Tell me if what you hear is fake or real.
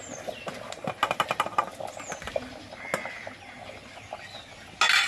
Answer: real